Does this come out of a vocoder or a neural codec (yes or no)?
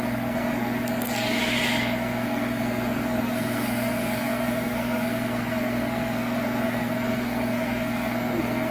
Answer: yes